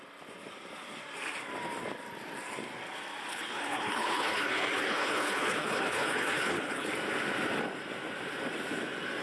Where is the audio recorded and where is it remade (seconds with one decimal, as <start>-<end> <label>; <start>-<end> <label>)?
0.0-3.3 recorded; 3.3-6.9 remade; 6.9-9.2 recorded